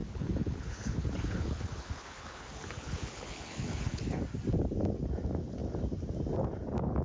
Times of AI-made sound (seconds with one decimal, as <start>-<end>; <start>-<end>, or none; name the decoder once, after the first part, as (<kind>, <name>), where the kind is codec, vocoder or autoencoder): 0.0-4.2 (codec, HILCodec)